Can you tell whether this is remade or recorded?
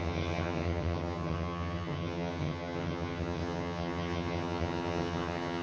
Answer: remade